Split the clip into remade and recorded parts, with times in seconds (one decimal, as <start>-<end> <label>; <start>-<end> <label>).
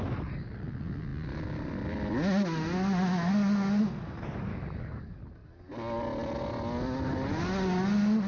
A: 0.0-8.3 recorded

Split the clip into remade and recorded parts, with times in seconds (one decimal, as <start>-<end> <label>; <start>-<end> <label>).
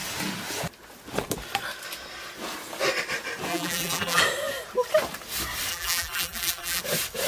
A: 0.0-3.5 recorded; 3.5-4.2 remade; 4.2-5.7 recorded; 5.7-6.8 remade; 6.8-7.3 recorded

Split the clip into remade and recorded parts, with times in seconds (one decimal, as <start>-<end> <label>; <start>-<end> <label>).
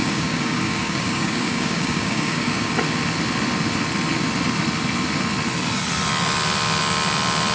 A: 0.0-2.7 remade; 2.7-7.5 recorded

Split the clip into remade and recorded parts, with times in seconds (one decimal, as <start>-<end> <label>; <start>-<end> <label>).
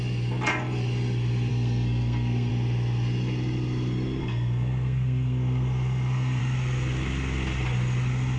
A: 0.0-1.5 recorded; 1.5-2.5 remade; 2.5-4.2 recorded; 4.2-6.4 remade; 6.4-8.4 recorded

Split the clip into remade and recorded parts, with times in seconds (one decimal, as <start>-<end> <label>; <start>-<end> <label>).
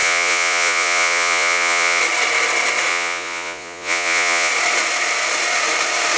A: 0.0-2.0 remade; 2.0-2.9 recorded; 2.9-4.5 remade; 4.5-6.2 recorded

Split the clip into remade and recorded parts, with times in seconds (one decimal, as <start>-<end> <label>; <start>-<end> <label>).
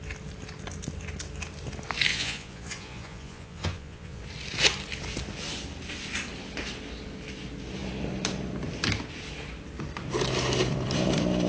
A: 0.0-2.1 recorded; 2.1-4.2 remade; 4.2-11.5 recorded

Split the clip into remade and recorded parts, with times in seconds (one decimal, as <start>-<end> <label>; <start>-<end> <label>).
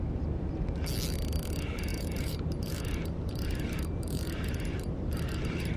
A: 0.0-1.9 recorded; 1.9-5.8 remade